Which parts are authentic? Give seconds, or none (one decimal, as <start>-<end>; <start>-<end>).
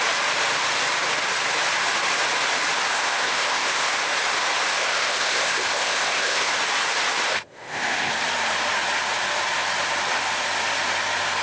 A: 0.0-2.9; 3.9-4.7; 6.5-7.3; 8.1-11.4